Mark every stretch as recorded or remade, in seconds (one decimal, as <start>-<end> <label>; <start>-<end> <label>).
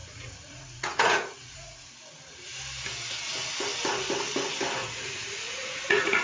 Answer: 0.0-1.9 remade; 1.9-4.8 recorded; 4.8-6.2 remade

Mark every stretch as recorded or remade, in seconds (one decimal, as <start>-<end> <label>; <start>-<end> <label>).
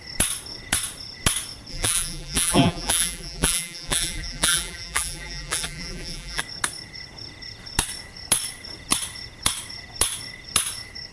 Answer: 0.0-1.7 recorded; 1.7-6.4 remade; 6.4-11.1 recorded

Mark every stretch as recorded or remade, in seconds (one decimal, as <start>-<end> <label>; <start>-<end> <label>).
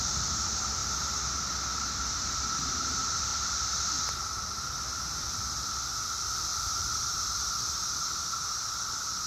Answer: 0.0-0.8 remade; 0.8-2.0 recorded; 2.0-3.3 remade; 3.3-5.1 recorded; 5.1-9.3 remade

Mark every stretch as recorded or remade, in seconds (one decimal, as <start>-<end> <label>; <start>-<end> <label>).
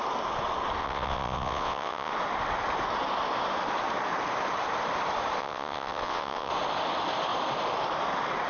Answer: 0.0-0.8 recorded; 0.8-2.1 remade; 2.1-5.4 recorded; 5.4-6.5 remade; 6.5-8.5 recorded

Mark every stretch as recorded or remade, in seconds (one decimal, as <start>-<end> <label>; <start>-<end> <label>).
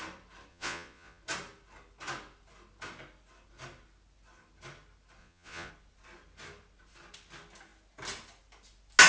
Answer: 0.0-0.5 recorded; 0.5-1.2 remade; 1.2-5.2 recorded; 5.2-5.7 remade; 5.7-9.1 recorded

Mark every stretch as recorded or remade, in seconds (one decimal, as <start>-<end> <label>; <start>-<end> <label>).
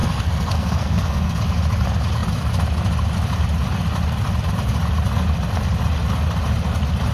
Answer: 0.0-1.4 remade; 1.4-7.1 recorded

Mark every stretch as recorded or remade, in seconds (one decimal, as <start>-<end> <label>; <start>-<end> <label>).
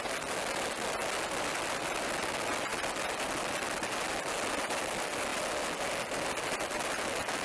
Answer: 0.0-7.4 recorded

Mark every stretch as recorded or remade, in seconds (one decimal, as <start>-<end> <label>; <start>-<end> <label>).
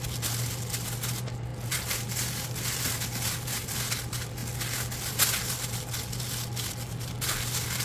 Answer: 0.0-7.8 recorded